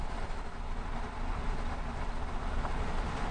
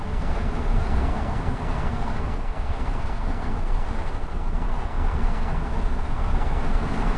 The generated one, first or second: second